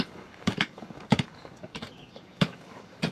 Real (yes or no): no